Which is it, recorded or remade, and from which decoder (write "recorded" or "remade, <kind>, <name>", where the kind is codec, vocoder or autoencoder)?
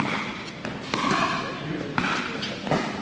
recorded